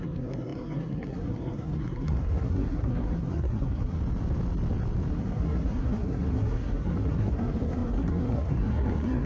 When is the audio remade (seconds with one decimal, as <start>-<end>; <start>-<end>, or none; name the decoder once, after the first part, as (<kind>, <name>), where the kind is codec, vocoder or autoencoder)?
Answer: 0.0-4.0 (codec, SNAC); 5.1-9.3